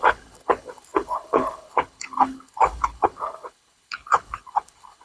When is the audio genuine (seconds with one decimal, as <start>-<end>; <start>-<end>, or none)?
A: none